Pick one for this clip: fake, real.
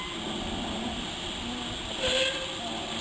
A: real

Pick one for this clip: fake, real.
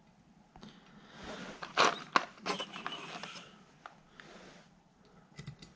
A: real